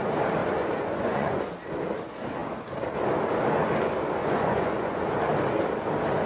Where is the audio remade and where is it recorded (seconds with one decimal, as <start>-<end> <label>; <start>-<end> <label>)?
0.0-0.4 recorded; 0.4-1.4 remade; 1.4-4.2 recorded; 4.2-5.2 remade; 5.2-6.3 recorded